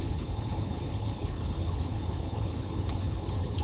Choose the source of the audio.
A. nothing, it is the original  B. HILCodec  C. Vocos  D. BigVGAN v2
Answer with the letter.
B